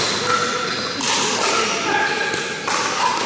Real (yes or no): yes